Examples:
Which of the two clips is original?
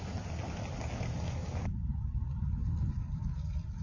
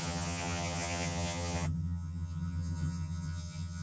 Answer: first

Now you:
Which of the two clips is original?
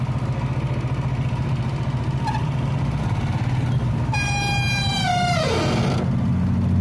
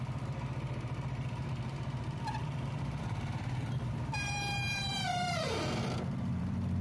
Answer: first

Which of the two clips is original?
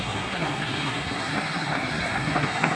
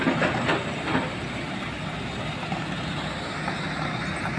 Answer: second